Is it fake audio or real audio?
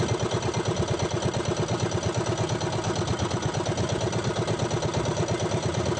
real